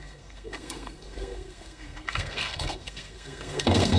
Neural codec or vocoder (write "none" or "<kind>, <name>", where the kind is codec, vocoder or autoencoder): codec, SNAC